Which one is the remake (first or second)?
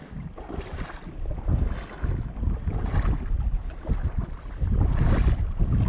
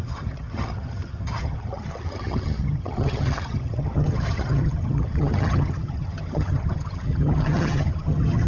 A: second